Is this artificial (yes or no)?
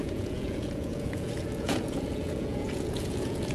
yes